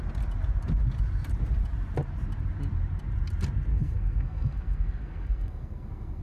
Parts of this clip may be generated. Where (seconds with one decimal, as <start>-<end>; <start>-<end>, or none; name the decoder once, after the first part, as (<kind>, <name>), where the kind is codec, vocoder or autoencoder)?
3.7-6.2 (codec, SNAC)